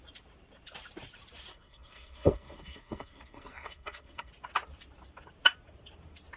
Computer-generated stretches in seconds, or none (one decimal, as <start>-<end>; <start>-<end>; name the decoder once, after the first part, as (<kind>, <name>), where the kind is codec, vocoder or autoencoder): 1.5-4.3 (codec, SNAC)